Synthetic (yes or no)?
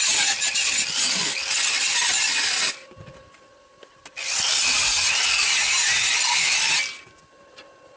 no